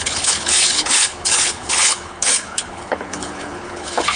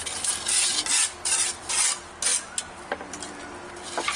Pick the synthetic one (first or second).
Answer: first